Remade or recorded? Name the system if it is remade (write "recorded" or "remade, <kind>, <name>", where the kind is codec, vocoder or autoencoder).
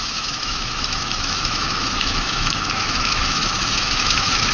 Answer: remade, autoencoder, DAC-VAE